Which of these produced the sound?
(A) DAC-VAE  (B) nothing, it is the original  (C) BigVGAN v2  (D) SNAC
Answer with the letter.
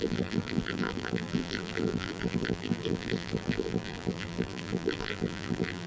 C